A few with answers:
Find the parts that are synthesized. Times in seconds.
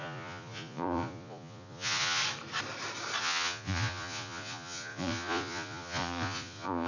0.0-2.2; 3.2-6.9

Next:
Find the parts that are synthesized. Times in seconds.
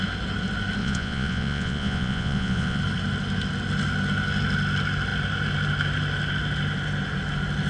0.8-2.8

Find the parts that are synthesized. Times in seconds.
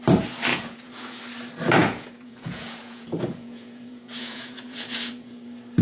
0.5-1.2; 1.8-5.3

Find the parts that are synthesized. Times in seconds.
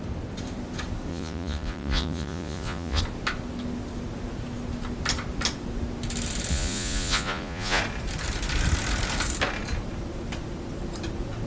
1.1-3.0; 6.5-7.8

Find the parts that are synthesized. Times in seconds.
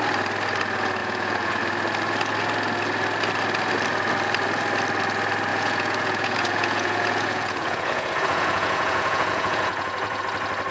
1.0-1.6; 5.5-10.2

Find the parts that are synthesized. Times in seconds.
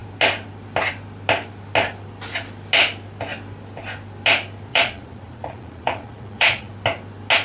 4.7-6.7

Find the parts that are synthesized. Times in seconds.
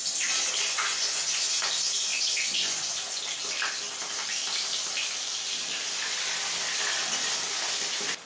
0.6-1.7; 2.1-3.2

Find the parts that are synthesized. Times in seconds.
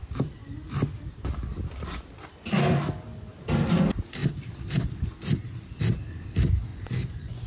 6.7-7.5